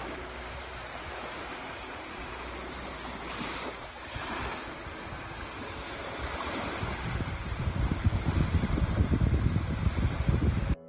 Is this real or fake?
fake